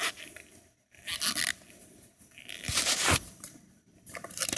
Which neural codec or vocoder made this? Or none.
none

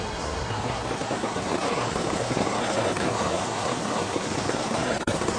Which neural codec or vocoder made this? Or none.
codec, SNAC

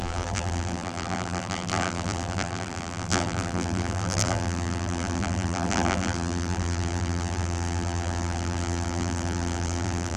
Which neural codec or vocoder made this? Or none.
vocoder, BigVGAN v2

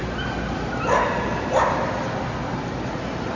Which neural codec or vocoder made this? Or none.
none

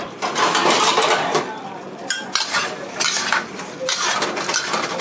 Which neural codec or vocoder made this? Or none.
none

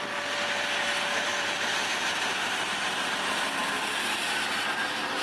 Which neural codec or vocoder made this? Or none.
vocoder, BigVGAN v2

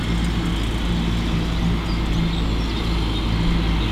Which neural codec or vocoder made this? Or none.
none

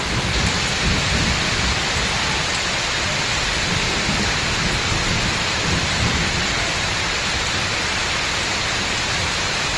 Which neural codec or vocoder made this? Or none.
vocoder, BigVGAN v2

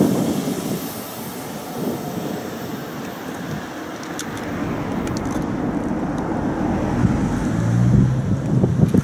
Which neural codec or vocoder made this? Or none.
none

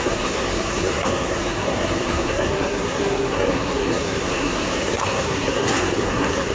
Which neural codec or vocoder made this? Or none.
codec, SNAC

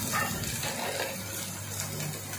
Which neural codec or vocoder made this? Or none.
none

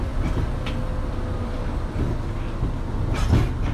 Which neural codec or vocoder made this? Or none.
none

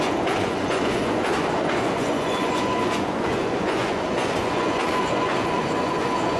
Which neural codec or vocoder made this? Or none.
vocoder, Vocos